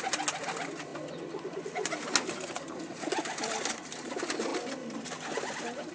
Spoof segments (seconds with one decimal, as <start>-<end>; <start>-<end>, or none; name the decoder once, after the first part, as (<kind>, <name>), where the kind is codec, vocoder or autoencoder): none